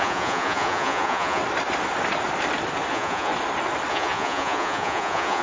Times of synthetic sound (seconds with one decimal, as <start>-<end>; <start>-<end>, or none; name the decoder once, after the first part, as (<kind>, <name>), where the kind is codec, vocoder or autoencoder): 0.0-1.4 (vocoder, Vocos); 2.9-3.3; 3.9-5.4